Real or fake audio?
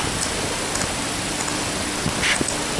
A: real